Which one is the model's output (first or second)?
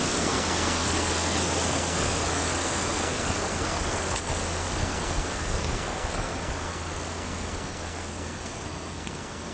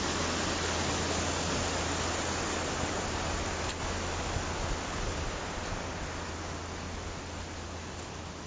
first